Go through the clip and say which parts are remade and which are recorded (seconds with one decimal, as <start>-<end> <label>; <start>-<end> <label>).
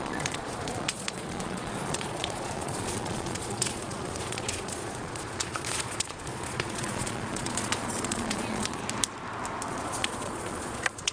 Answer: 0.0-8.8 remade; 8.8-9.7 recorded; 9.7-11.1 remade